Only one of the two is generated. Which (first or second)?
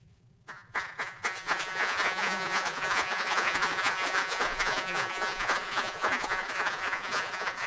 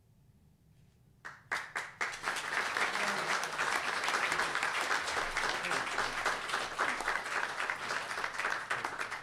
first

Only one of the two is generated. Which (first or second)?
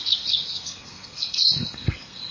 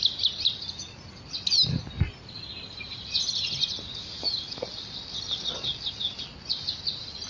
first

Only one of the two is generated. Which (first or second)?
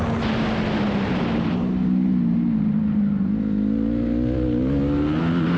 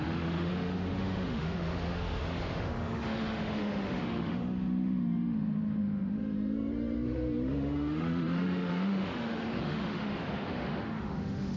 second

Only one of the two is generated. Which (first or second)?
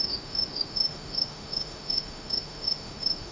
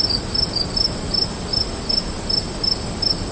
first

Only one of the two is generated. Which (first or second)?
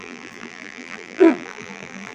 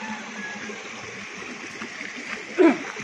first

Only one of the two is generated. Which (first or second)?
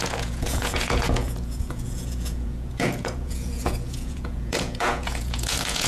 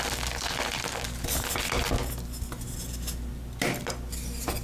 first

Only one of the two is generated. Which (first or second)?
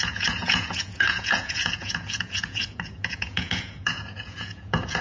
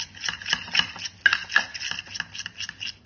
first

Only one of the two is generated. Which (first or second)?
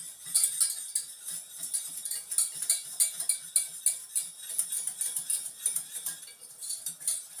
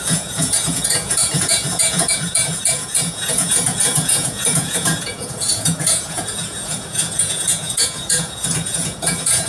second